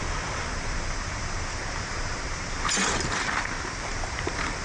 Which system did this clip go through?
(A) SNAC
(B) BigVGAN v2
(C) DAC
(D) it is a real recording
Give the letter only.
D